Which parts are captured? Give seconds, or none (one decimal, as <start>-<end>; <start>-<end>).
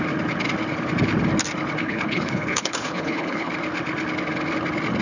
0.0-1.8; 3.5-5.0